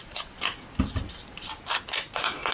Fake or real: real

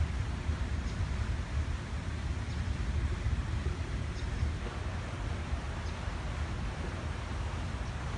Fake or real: real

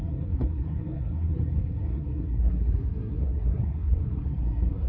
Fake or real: fake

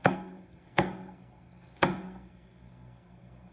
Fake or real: fake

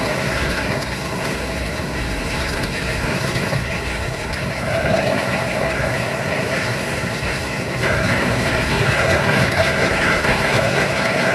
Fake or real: fake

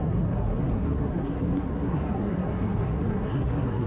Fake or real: fake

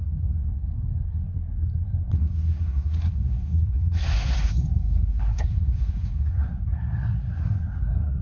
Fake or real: fake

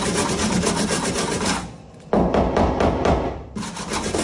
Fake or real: real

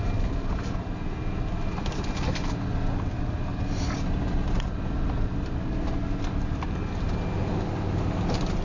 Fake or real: real